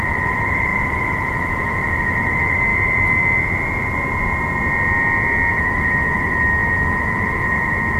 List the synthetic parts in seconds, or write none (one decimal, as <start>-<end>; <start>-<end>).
0.0-2.7; 5.5-8.0